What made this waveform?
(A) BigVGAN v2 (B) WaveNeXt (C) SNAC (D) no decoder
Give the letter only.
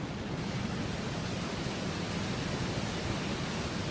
D